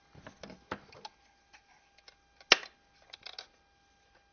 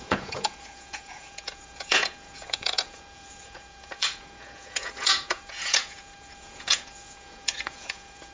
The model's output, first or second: second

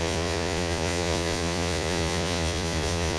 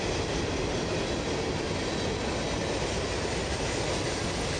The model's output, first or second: first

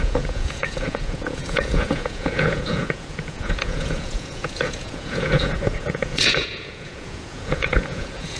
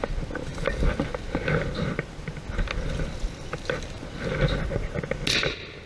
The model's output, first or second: first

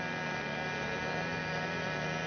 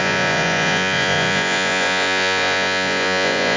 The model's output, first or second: second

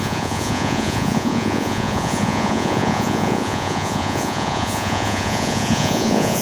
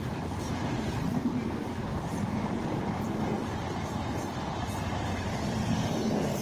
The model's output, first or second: first